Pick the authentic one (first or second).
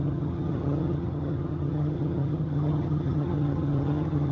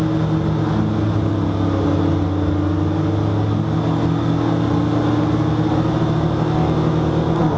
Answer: second